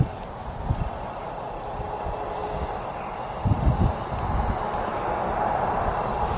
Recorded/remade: recorded